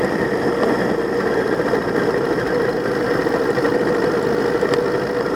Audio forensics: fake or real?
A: real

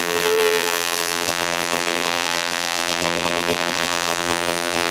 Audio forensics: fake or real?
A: fake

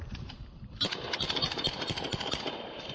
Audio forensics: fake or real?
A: fake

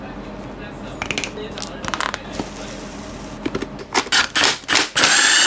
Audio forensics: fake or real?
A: real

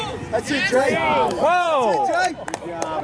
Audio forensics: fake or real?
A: fake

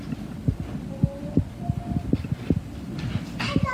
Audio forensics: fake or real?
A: real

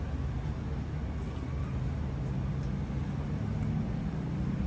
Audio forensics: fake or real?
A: real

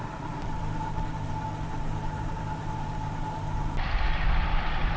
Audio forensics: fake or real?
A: fake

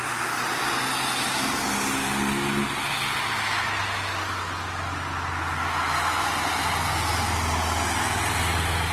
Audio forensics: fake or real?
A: real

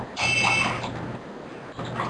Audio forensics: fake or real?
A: real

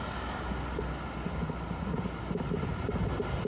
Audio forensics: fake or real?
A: real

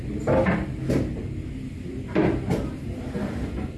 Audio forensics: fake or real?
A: real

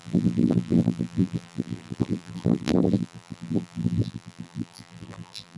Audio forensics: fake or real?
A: fake